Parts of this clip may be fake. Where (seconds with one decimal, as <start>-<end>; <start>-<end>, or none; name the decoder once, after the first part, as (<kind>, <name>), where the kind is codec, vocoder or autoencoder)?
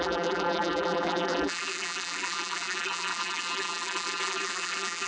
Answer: 0.0-5.1 (vocoder, BigVGAN v2)